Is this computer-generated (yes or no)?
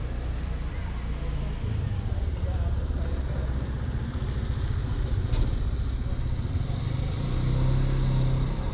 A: no